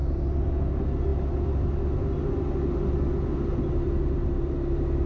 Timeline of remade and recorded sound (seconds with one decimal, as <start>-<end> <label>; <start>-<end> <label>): 0.0-5.1 recorded